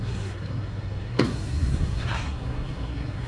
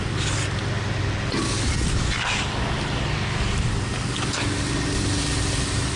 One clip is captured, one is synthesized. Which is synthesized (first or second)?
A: first